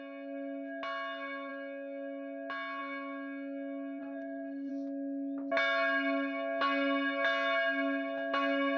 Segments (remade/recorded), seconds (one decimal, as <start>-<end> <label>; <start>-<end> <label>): 0.0-4.0 recorded; 4.0-4.7 remade; 4.7-8.8 recorded